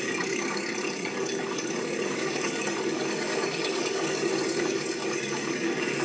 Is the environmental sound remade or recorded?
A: remade